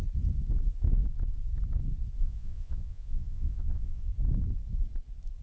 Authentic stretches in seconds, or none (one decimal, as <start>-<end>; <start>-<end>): 0.0-2.2; 4.1-5.4